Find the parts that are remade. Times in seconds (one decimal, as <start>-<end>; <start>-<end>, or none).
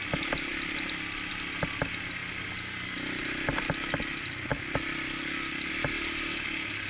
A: none